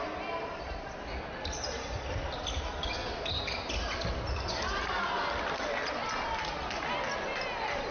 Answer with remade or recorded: recorded